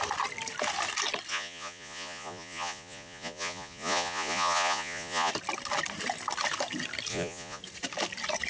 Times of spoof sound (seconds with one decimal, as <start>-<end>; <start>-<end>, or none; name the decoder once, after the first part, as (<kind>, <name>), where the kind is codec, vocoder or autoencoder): 1.3-5.3 (vocoder, Vocos); 7.1-7.6